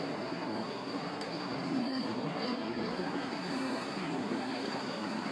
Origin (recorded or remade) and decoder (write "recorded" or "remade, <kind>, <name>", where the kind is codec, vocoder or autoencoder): remade, codec, SNAC